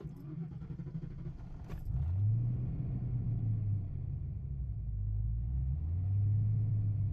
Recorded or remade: recorded